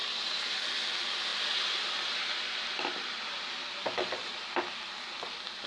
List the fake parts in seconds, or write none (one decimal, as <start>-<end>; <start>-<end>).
0.0-0.6

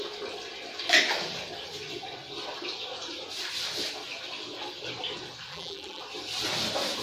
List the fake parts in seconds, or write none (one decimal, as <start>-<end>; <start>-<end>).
5.5-6.0

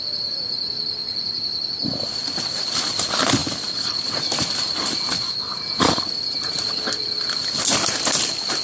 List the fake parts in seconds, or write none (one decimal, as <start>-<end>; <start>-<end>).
none

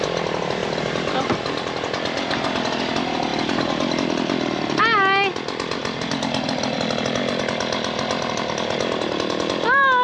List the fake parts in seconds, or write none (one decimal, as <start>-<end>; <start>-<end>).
0.6-2.8; 3.3-4.8; 5.8-7.4

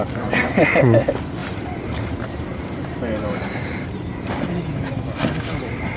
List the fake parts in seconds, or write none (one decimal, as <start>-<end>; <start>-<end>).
1.4-5.0

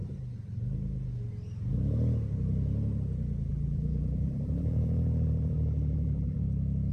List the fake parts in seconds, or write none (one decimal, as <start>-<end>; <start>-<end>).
3.5-6.4

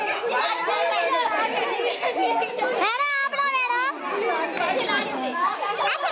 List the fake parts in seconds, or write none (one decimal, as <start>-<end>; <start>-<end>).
none